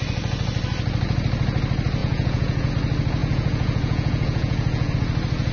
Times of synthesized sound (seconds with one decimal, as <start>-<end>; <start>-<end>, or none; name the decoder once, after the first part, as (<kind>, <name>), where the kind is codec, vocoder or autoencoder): 2.0-2.7 (vocoder, Vocos); 3.2-4.9